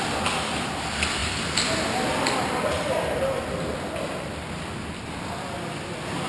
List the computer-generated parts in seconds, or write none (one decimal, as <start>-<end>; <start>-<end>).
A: 1.2-5.0